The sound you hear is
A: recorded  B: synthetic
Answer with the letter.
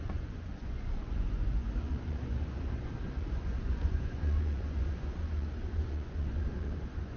B